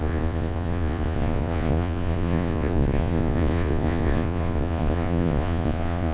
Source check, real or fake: fake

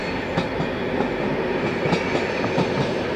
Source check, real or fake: real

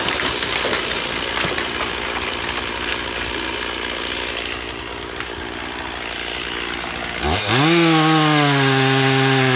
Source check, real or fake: real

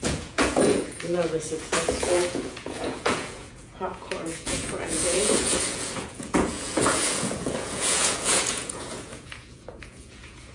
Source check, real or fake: fake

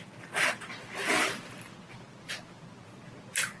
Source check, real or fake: real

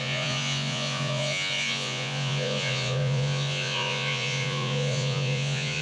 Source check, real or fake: fake